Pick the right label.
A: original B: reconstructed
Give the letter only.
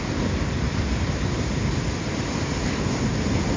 A